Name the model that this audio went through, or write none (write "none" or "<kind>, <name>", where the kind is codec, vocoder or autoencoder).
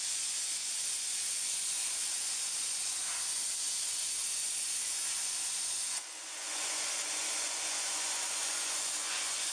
vocoder, Vocos